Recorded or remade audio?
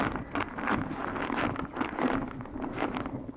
recorded